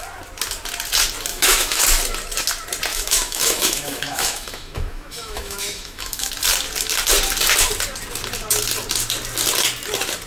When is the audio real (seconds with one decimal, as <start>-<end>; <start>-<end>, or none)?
0.0-1.3; 1.8-2.9; 6.3-10.3